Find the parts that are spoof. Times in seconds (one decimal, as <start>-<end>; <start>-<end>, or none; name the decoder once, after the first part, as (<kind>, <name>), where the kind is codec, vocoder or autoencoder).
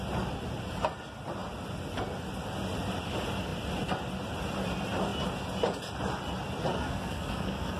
6.7-7.8 (codec, SNAC)